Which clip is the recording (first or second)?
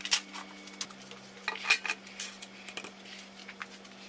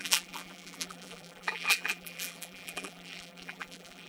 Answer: first